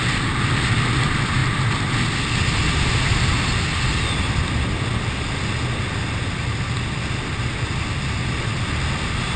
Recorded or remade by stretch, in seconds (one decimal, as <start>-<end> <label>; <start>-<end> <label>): 0.0-9.4 recorded